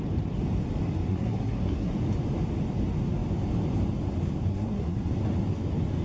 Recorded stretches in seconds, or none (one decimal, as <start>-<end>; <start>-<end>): 0.0-1.1; 1.9-4.5; 5.1-6.0

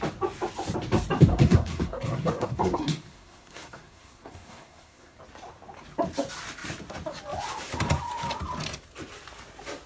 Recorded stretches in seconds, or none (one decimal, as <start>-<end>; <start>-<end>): 0.0-1.3; 5.2-9.9

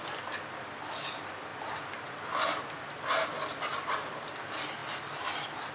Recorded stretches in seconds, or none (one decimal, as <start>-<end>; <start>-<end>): 0.0-1.5; 2.3-5.7